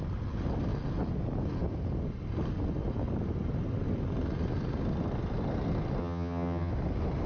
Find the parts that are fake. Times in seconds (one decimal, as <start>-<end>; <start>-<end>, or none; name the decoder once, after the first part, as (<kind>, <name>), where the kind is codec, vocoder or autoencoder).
6.0-6.7 (vocoder, HiFi-GAN)